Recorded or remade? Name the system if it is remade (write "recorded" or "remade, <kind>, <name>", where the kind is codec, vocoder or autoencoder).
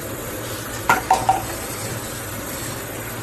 recorded